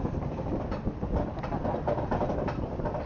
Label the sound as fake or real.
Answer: fake